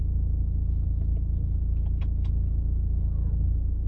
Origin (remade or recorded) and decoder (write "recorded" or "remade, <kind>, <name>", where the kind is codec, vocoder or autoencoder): recorded